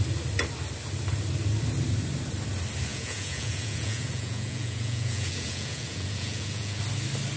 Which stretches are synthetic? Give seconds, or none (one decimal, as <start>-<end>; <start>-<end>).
2.9-6.8